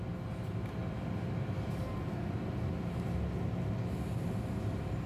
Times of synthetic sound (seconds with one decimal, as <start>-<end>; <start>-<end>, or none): none